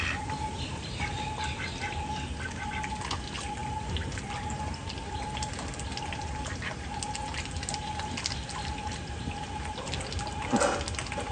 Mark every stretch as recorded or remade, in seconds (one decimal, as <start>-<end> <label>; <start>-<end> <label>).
0.0-11.3 recorded